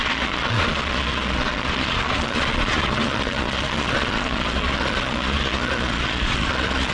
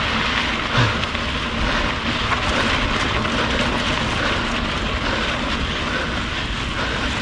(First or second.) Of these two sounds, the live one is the second